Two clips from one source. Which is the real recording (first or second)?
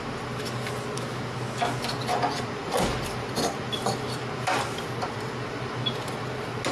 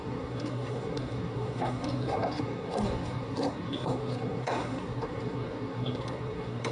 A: first